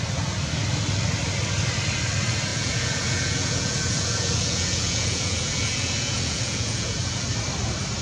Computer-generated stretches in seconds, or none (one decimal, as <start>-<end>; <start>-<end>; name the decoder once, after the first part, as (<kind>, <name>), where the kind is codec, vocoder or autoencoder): 2.5-7.2 (vocoder, Vocos)